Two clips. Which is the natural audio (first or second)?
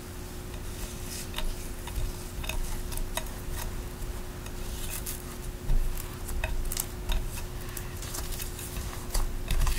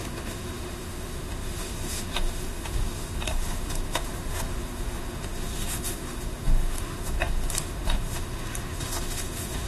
first